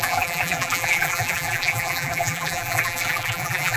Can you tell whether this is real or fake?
fake